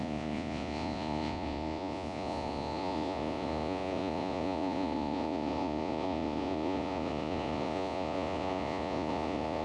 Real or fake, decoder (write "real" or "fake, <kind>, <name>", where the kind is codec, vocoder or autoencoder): fake, vocoder, Vocos